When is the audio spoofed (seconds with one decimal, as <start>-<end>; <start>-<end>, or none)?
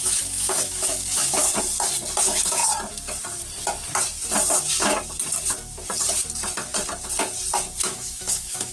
0.0-1.5; 2.2-2.6; 7.8-8.7